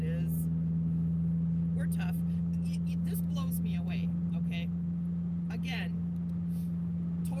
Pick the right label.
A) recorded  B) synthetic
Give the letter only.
A